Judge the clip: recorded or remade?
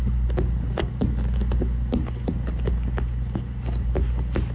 recorded